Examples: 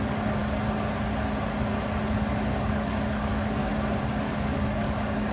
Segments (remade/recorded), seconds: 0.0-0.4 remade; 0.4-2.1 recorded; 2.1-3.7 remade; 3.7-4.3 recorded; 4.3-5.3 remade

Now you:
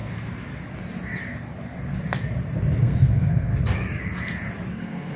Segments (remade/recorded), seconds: 0.0-2.8 recorded; 2.8-3.5 remade; 3.5-4.7 recorded; 4.7-5.2 remade